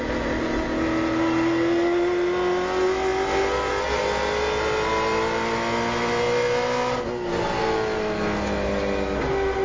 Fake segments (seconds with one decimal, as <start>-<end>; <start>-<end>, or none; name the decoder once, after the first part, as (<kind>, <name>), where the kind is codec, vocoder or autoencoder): none